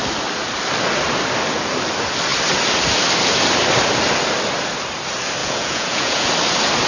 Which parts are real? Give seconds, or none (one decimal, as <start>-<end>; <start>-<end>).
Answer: 0.0-5.4; 6.3-6.9